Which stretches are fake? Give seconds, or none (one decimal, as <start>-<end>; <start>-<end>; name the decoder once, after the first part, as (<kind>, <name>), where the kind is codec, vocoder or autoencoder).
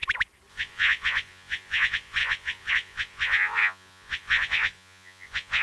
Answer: 0.5-5.6 (vocoder, Vocos)